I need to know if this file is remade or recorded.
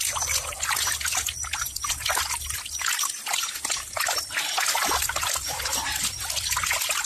recorded